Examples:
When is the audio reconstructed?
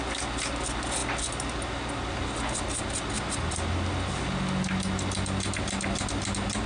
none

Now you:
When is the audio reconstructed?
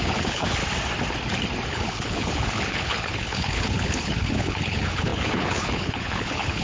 0.0-0.6 (codec, HILCodec); 1.7-6.6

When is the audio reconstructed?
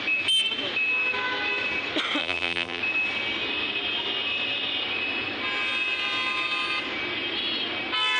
2.2-2.8 (vocoder, BigVGAN v2)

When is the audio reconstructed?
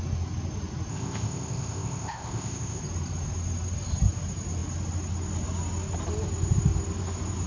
0.9-2.8 (codec, ZipCodec)